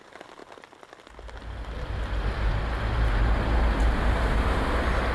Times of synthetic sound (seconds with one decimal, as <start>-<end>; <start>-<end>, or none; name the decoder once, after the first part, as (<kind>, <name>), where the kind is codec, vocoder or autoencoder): none